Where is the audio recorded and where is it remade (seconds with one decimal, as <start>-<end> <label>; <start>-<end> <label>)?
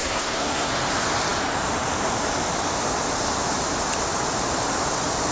0.0-0.7 remade; 0.7-5.3 recorded